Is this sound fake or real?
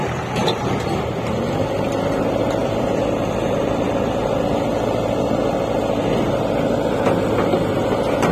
real